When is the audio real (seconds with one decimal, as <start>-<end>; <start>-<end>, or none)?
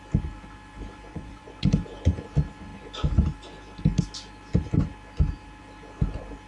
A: 0.0-1.1; 1.7-6.5